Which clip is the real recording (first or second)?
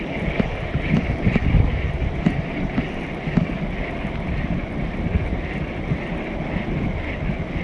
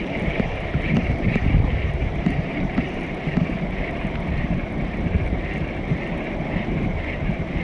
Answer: first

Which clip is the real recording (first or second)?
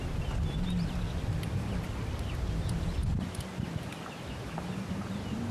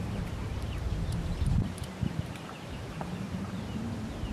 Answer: first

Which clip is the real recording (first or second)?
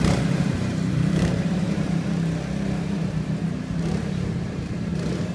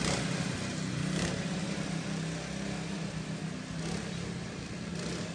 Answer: second